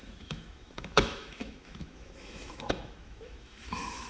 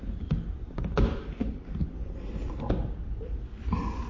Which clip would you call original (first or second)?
second